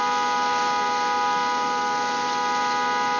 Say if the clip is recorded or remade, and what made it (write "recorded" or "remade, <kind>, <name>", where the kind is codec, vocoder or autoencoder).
recorded